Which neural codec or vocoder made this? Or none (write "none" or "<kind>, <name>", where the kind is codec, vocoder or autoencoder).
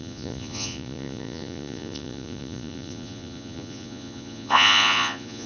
vocoder, Vocos